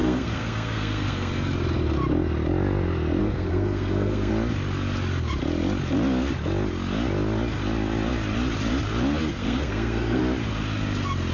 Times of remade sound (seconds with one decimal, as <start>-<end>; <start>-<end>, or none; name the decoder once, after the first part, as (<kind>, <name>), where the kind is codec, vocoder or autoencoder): 0.0-1.3 (codec, SNAC); 3.2-4.3; 9.3-10.2